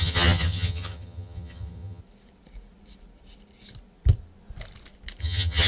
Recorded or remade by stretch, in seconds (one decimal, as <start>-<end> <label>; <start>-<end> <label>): 0.0-2.0 remade; 2.0-5.2 recorded; 5.2-5.7 remade